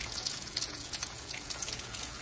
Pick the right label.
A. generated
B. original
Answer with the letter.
A